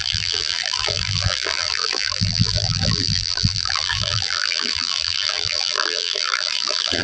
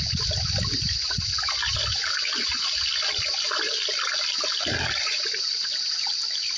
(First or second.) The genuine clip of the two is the second